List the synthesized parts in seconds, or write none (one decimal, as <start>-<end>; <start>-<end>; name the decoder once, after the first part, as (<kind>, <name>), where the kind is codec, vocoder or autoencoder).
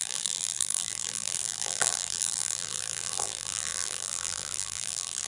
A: 0.0-5.3 (vocoder, BigVGAN v2)